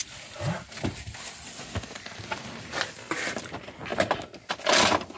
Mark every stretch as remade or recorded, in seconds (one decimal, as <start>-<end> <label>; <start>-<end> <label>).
0.0-5.2 recorded